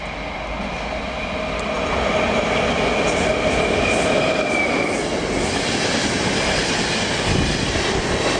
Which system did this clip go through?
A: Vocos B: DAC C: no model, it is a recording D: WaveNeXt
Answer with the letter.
C